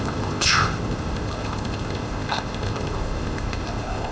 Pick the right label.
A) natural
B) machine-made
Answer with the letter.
B